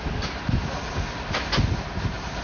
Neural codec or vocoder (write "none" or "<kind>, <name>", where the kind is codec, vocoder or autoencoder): none